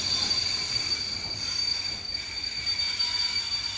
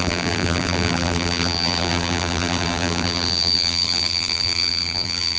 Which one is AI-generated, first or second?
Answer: second